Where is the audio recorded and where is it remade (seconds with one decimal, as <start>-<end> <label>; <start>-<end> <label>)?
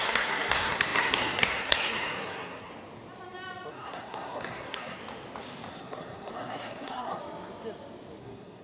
0.0-2.7 remade; 2.7-3.7 recorded; 3.7-5.0 remade; 5.0-5.7 recorded; 5.7-7.2 remade; 7.2-8.2 recorded; 8.2-8.6 remade